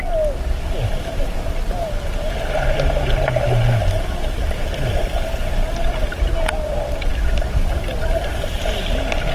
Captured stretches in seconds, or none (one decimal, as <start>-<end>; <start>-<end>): 0.0-7.1; 8.8-9.3